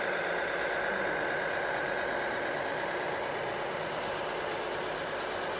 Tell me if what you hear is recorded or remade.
recorded